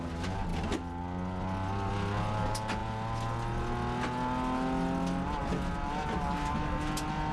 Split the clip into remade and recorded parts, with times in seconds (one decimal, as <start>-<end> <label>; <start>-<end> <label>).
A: 0.0-7.3 recorded